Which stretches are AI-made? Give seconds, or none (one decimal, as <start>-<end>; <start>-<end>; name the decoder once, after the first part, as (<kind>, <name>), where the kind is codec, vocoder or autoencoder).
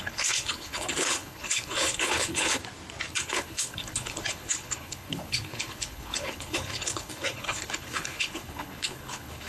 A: 0.0-2.6 (codec, HILCodec); 3.1-9.5